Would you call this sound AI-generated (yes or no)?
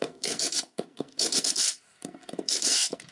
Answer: yes